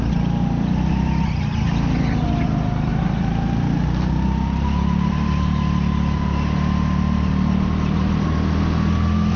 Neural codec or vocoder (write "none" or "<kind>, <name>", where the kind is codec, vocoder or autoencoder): none